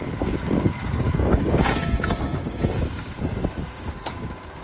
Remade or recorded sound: remade